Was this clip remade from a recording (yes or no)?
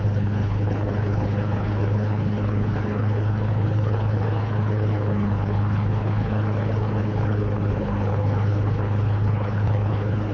yes